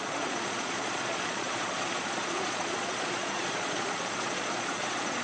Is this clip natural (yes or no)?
no